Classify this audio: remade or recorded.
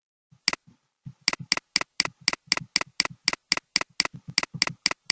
recorded